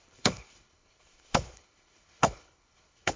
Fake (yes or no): yes